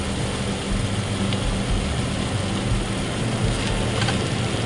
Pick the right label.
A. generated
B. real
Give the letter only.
B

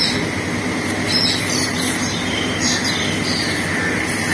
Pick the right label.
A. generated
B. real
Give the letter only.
B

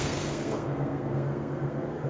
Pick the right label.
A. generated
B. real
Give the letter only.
A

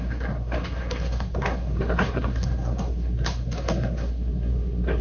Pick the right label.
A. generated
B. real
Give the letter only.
A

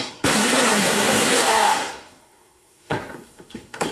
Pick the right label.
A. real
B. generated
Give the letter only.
B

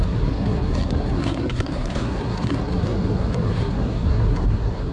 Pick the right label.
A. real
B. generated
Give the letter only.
B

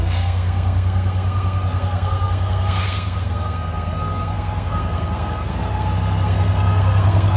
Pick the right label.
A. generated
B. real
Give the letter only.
A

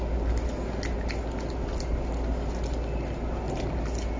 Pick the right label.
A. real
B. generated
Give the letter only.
A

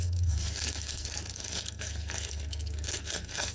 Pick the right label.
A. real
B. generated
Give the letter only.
B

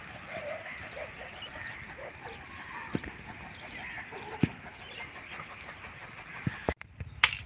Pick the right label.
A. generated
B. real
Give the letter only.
B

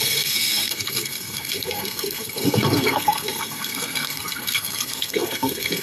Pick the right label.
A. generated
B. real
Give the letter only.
A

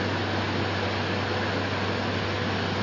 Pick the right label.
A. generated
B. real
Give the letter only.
B